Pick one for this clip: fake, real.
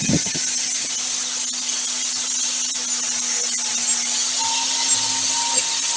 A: real